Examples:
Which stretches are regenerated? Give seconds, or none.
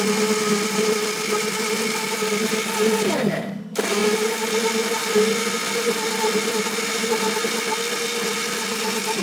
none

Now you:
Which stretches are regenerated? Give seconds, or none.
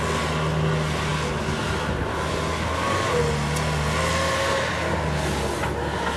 none